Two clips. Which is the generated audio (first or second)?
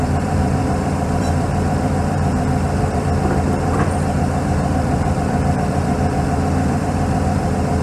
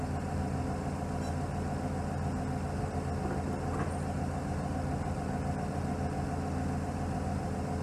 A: first